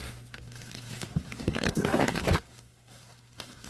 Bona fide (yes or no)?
no